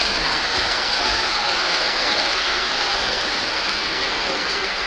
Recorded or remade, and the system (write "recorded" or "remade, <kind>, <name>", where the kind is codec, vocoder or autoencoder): remade, codec, SNAC